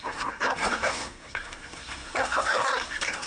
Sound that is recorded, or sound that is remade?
remade